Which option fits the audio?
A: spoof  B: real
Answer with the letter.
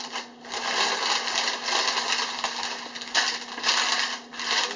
B